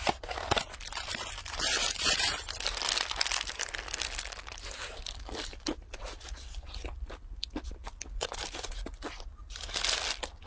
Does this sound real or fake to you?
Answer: real